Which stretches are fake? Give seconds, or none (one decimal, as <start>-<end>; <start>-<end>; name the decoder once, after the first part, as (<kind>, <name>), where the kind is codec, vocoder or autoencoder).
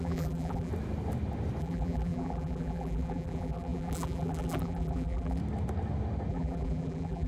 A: 0.0-0.7 (vocoder, BigVGAN v2); 1.6-5.4; 6.3-7.3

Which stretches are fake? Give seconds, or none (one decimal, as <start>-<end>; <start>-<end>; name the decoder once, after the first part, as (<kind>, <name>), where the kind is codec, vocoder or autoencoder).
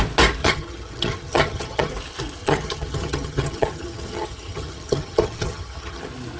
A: 0.4-1.9 (vocoder, HiFi-GAN); 2.4-6.0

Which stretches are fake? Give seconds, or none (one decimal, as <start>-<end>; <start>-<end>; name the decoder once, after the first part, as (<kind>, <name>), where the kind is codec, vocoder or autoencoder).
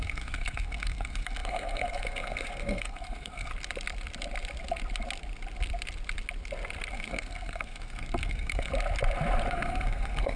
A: 0.0-3.5 (codec, SNAC); 6.9-8.7; 9.5-10.4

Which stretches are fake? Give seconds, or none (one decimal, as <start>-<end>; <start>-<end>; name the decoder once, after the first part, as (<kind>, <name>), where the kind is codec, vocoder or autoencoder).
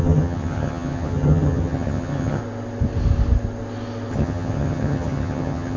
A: 0.0-2.4 (vocoder, HiFi-GAN); 4.1-5.8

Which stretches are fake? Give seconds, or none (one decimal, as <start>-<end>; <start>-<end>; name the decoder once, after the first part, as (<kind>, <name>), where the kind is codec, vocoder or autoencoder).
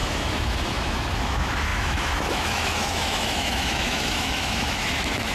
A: 0.0-5.3 (autoencoder, DAC-VAE)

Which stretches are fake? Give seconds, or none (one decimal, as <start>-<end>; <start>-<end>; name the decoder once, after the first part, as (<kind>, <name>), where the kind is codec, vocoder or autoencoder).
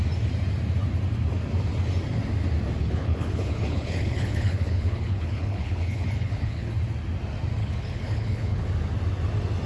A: 2.8-6.7 (codec, HILCodec); 7.6-8.6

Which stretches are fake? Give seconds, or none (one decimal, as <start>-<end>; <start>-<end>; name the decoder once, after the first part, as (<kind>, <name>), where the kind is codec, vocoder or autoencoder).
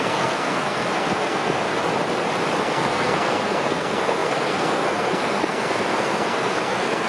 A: 0.0-1.7 (codec, SNAC); 2.6-7.1